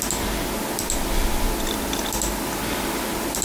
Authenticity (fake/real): real